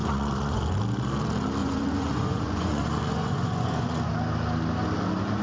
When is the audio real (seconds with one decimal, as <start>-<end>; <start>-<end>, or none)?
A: 0.6-1.6; 4.1-5.4